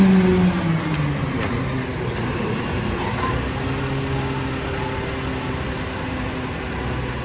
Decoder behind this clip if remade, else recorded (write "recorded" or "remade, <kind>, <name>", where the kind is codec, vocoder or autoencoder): recorded